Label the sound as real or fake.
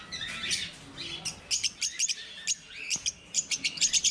real